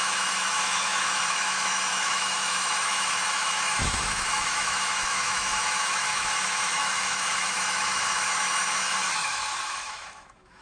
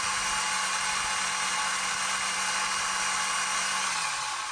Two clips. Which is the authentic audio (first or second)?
second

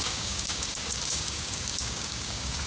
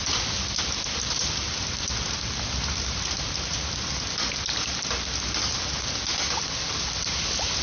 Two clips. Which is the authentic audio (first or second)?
second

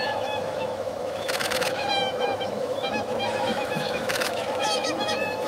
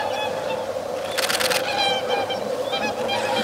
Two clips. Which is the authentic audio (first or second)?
second